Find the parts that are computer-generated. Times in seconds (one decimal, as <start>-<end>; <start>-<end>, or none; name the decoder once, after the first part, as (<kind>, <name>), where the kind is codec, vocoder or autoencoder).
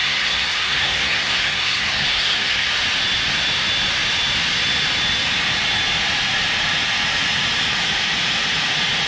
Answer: 0.0-2.7 (codec, SNAC)